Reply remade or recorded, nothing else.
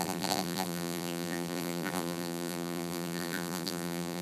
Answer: remade